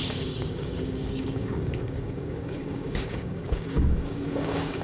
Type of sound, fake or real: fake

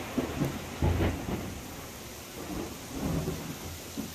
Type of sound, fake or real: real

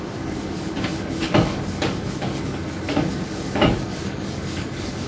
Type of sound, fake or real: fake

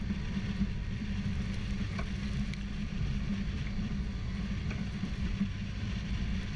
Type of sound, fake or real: fake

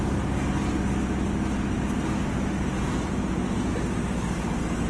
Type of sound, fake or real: real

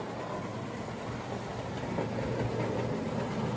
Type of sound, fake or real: real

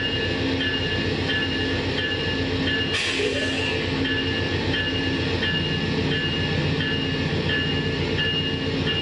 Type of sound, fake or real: real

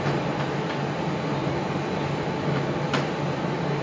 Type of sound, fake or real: real